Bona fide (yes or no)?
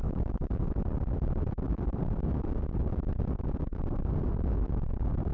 yes